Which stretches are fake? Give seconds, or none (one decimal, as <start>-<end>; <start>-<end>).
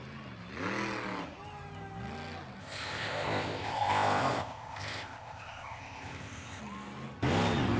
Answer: 2.6-6.6